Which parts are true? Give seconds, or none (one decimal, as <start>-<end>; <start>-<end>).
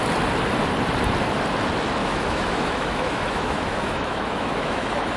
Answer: 0.0-2.0